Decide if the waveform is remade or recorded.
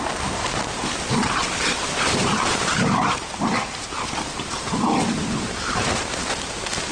remade